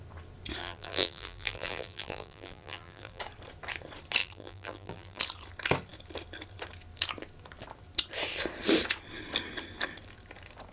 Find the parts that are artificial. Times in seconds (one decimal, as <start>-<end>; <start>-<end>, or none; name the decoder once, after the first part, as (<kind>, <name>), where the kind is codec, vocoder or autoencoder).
0.6-3.2 (vocoder, BigVGAN v2); 4.2-5.2